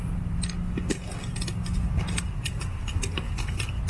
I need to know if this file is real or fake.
real